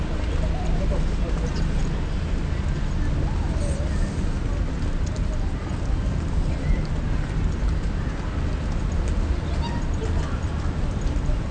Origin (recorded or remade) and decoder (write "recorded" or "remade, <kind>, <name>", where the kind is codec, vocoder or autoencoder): recorded